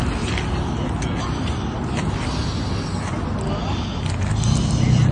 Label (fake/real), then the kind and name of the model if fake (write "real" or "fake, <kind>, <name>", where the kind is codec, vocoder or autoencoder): real